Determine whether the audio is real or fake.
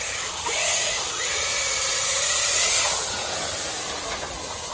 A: real